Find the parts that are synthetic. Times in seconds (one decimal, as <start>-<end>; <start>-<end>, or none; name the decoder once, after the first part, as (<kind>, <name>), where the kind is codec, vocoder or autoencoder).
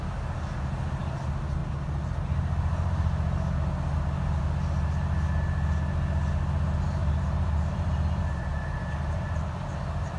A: 7.0-10.2 (vocoder, BigVGAN v2)